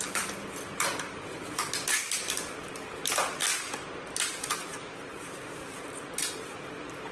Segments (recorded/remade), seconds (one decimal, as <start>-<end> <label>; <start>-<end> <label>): 0.0-7.1 recorded